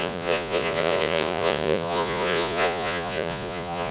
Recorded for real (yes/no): no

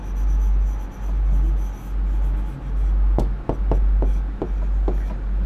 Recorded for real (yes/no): yes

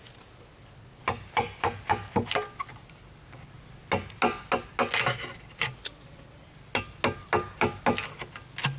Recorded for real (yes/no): yes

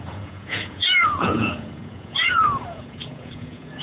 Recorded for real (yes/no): no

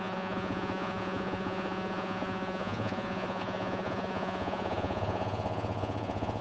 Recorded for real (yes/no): no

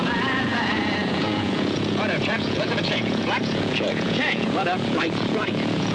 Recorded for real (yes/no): no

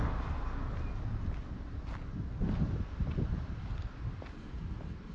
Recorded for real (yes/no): yes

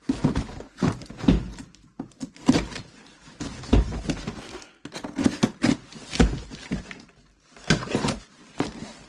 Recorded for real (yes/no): yes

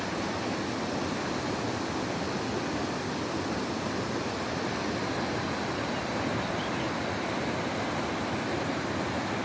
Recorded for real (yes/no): yes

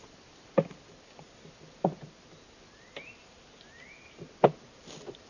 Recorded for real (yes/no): yes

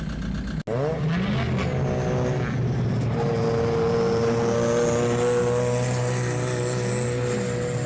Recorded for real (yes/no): yes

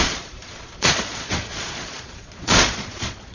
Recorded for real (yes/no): no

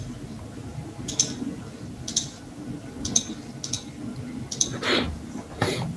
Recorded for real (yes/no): yes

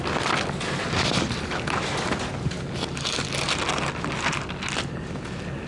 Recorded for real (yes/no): yes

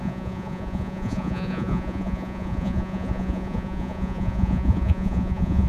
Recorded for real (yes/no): no